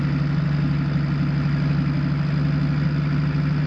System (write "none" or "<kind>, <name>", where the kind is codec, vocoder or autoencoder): none